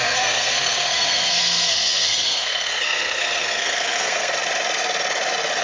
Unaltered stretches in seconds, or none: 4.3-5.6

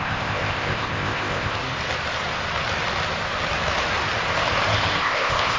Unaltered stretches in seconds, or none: 1.6-5.0